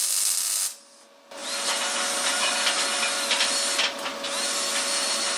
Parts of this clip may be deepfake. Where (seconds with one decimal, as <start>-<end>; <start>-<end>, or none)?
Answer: none